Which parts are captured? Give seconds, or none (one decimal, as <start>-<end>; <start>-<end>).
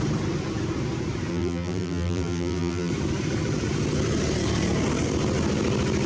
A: 0.0-1.3; 2.9-6.1